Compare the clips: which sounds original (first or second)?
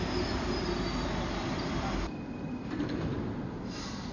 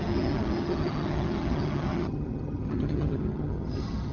first